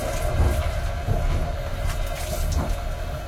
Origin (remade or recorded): recorded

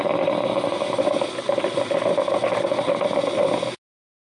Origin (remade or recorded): recorded